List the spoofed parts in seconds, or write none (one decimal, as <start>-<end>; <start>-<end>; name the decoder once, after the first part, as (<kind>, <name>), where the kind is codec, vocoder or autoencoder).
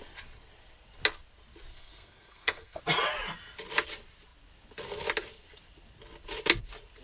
1.7-2.8 (codec, SNAC)